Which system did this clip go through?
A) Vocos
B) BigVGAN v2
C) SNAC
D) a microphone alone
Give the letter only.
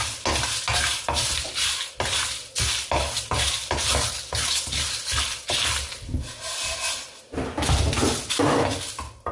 D